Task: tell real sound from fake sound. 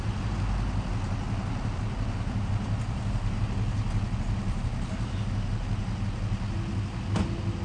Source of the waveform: real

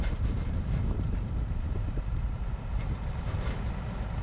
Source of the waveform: fake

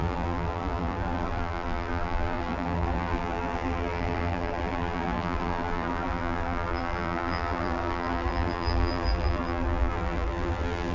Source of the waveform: fake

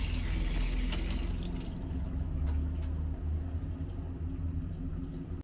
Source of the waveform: real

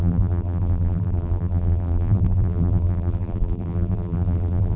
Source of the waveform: fake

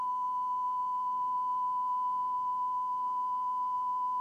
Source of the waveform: real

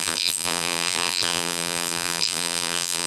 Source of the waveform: fake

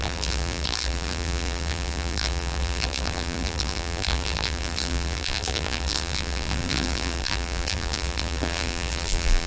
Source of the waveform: fake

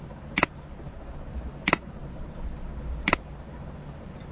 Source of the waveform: real